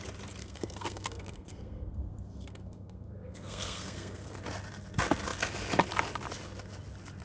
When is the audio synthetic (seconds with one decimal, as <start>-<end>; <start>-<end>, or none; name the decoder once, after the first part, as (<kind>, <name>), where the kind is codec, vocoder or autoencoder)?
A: 0.4-4.4 (codec, SNAC)